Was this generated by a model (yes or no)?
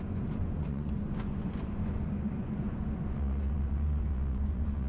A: yes